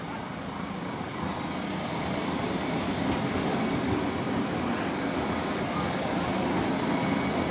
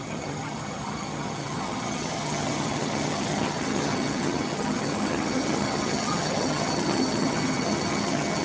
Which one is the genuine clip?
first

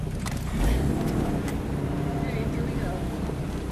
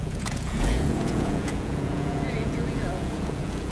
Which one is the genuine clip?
first